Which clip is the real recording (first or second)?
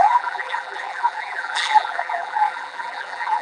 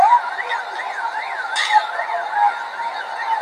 second